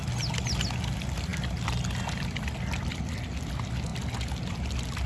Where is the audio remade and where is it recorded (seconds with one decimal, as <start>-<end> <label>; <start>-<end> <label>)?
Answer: 0.0-5.1 recorded